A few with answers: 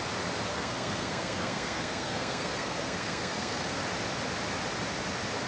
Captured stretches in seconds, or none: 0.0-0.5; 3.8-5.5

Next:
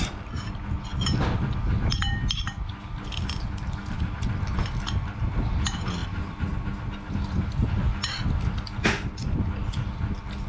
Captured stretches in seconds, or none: 0.0-10.5

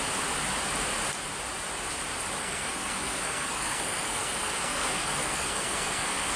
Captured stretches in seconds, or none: 0.0-2.4